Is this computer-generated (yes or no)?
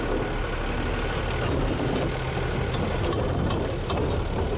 no